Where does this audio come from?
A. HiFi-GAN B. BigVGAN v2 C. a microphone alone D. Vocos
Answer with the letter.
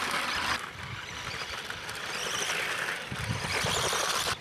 C